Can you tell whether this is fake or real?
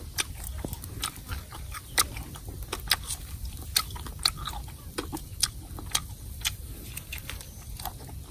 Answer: real